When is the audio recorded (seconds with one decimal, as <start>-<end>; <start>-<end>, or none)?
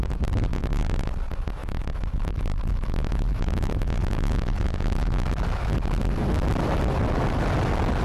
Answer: 0.0-0.5; 1.1-1.6; 5.7-8.0